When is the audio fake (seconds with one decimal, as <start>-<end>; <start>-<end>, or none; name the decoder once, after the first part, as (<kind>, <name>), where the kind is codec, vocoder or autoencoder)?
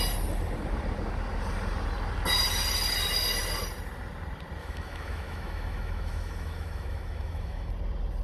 4.6-7.7 (autoencoder, DAC-VAE)